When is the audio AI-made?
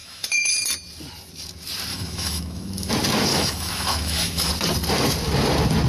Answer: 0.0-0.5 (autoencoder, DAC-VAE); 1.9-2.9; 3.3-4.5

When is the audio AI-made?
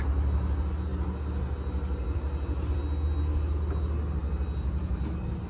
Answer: none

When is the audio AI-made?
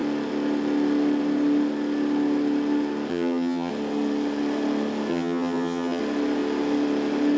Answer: 3.1-3.7 (vocoder, HiFi-GAN); 5.1-6.0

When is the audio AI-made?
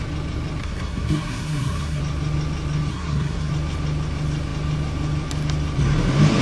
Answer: 0.6-2.0 (codec, SNAC); 2.9-3.5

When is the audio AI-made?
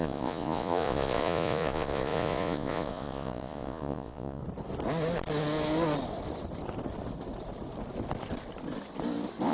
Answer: 0.0-4.4 (vocoder, Vocos)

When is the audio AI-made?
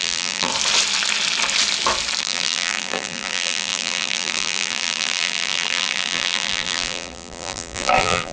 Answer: 0.0-0.5 (vocoder, BigVGAN v2); 2.2-8.3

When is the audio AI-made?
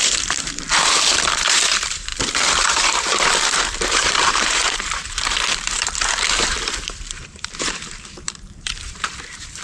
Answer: 0.0-1.1 (vocoder, BigVGAN v2); 1.7-9.6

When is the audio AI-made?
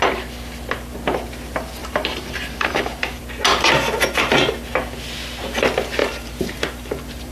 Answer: 1.8-3.2 (vocoder, BigVGAN v2); 6.0-7.3